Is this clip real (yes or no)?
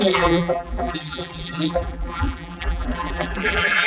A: no